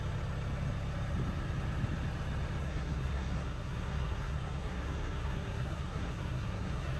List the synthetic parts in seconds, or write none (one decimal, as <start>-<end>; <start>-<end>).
2.6-7.0